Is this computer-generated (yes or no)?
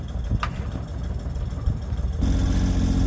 no